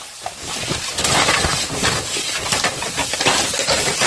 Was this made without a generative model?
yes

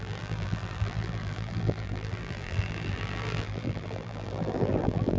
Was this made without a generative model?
no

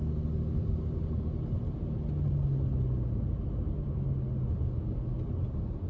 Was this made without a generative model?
yes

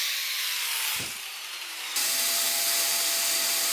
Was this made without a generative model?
no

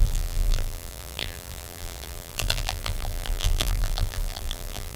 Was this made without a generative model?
no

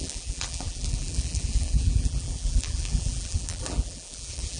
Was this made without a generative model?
no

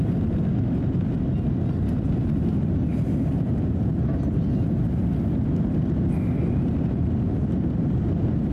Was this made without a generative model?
yes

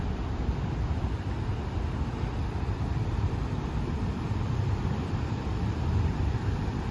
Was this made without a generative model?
no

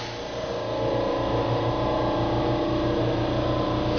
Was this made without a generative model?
yes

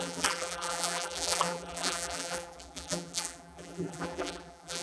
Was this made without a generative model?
no